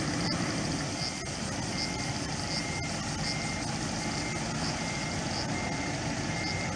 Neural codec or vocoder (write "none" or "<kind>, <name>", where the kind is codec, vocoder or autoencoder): none